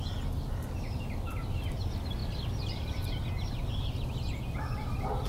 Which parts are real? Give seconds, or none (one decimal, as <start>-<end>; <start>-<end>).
0.0-2.2; 3.1-5.3